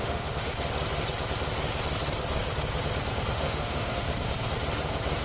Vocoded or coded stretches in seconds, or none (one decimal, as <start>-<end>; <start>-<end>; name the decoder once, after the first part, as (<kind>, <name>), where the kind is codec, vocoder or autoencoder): 0.0-0.5 (autoencoder, DAC-VAE); 3.3-4.1